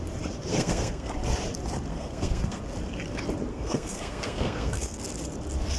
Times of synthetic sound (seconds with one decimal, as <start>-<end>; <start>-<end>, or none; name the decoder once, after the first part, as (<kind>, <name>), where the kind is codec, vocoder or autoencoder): 0.5-1.1 (codec, SNAC); 1.9-2.6; 3.5-5.0